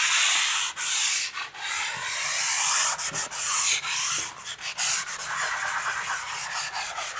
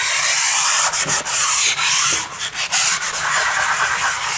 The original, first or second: first